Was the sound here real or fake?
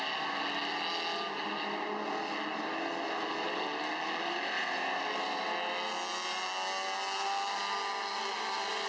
real